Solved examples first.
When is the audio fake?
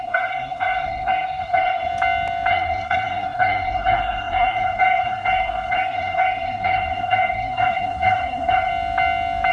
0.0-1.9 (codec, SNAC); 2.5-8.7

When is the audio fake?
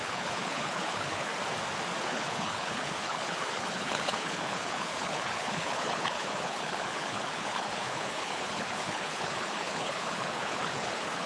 0.0-1.3 (codec, HILCodec); 2.0-11.3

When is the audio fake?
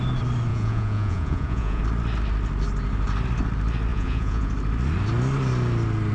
0.5-1.8 (vocoder, Vocos); 3.9-4.5